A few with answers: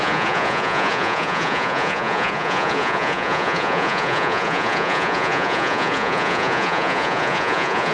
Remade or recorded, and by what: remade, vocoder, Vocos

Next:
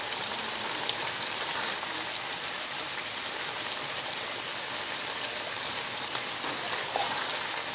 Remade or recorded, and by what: recorded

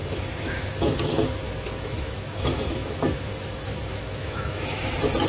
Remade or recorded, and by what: remade, autoencoder, DAC-VAE